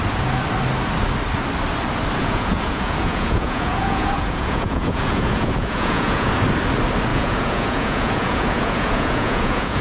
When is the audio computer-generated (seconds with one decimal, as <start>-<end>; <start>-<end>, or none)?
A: 2.2-6.3; 7.1-9.8